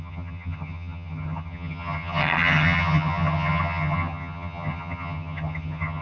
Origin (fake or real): fake